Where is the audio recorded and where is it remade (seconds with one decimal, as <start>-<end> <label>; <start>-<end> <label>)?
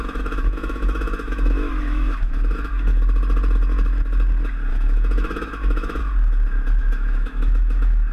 0.0-2.9 remade; 2.9-4.7 recorded; 4.7-6.0 remade; 6.0-6.8 recorded; 6.8-8.1 remade